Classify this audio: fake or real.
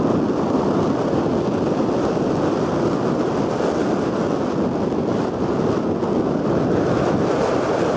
real